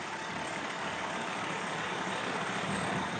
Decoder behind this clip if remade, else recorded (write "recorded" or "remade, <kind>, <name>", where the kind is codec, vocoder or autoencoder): remade, codec, DAC